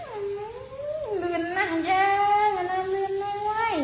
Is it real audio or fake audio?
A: real